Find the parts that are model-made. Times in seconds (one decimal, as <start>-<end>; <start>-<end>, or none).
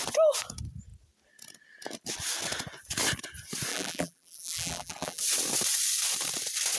3.7-5.2